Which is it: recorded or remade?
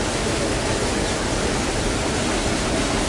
remade